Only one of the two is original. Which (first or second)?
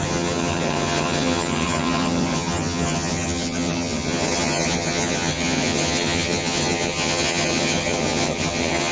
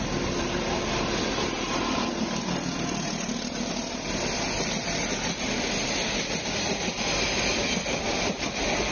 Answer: second